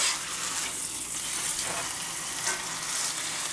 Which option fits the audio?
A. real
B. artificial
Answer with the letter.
A